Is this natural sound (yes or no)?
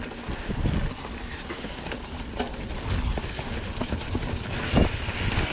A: yes